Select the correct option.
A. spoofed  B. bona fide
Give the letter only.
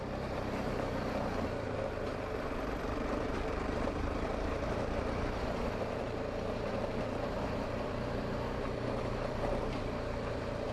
A